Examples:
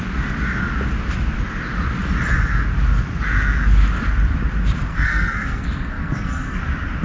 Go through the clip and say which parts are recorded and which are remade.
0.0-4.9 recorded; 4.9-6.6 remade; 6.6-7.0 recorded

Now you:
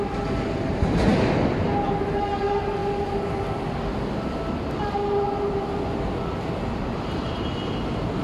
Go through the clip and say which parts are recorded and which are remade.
0.0-8.2 recorded

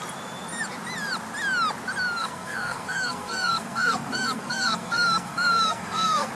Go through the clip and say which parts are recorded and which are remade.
0.0-2.2 recorded; 2.2-6.3 remade

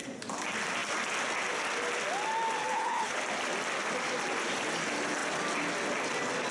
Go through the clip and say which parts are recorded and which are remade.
0.0-2.7 recorded; 2.7-3.2 remade; 3.2-6.5 recorded

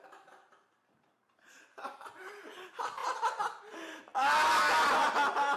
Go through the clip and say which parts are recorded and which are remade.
0.0-3.0 remade; 3.0-3.6 recorded; 3.6-4.1 remade; 4.1-5.6 recorded

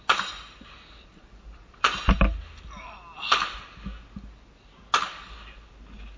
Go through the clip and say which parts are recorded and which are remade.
0.0-6.2 recorded

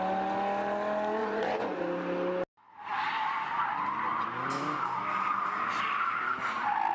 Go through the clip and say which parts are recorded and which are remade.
0.0-1.2 recorded; 1.2-1.8 remade; 1.8-6.9 recorded

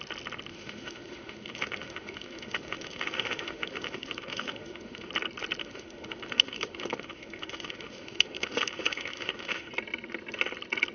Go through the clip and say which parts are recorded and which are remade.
0.0-0.5 recorded; 0.5-5.1 remade; 5.1-5.6 recorded; 5.6-9.7 remade; 9.7-10.9 recorded